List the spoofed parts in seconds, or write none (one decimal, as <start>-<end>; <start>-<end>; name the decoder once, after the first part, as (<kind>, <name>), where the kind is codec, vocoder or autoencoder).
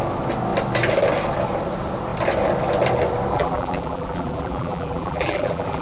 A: 3.3-5.8 (vocoder, BigVGAN v2)